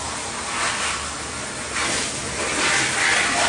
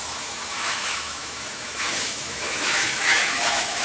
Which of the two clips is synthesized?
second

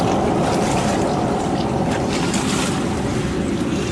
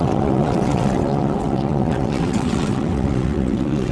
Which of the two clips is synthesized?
second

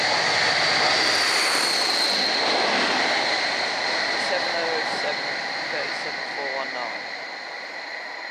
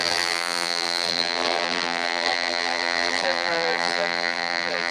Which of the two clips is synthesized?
second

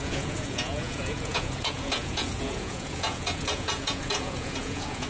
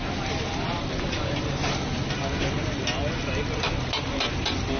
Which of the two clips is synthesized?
first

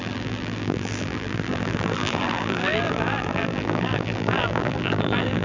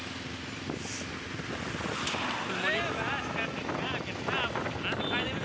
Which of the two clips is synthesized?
first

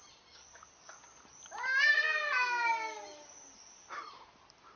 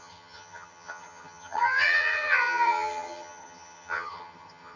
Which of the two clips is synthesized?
second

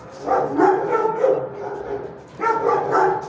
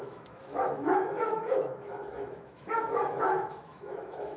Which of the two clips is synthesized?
second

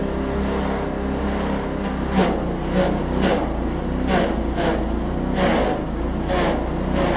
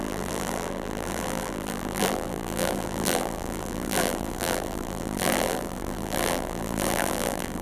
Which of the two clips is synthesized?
second